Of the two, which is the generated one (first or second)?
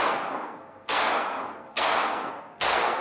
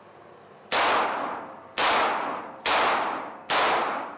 first